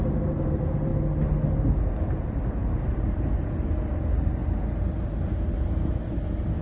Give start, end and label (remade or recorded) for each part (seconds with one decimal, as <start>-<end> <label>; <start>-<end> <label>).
0.0-0.9 remade; 0.9-1.8 recorded; 1.8-6.6 remade